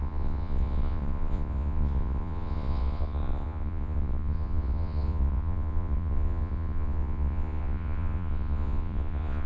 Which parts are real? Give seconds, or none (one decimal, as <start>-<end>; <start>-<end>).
none